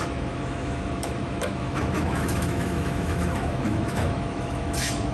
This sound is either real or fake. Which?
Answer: fake